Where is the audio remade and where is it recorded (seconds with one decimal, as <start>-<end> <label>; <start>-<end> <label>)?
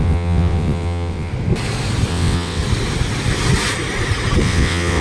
0.0-1.3 remade; 1.3-2.1 recorded; 2.1-2.6 remade; 2.6-4.4 recorded; 4.4-5.0 remade